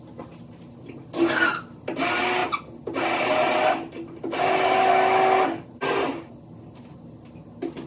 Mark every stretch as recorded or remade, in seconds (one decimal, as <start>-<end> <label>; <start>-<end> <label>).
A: 0.0-7.9 recorded